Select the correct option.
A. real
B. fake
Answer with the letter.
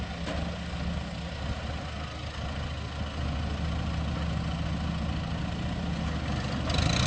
A